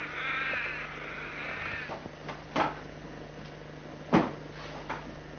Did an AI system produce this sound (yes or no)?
no